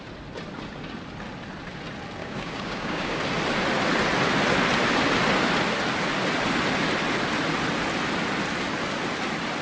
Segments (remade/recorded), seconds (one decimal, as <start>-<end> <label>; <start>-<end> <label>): 0.0-2.2 recorded; 2.2-3.2 remade; 3.2-9.6 recorded